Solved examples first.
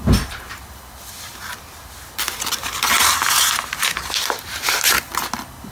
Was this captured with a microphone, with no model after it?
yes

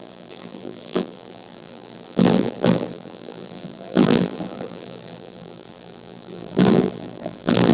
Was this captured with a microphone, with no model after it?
no